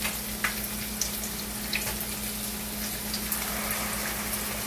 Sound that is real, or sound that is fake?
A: real